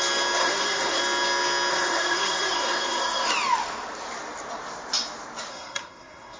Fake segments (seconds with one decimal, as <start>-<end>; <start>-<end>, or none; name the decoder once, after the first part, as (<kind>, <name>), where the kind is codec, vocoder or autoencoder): 0.4-1.0 (codec, SNAC); 1.7-3.3; 5.5-6.4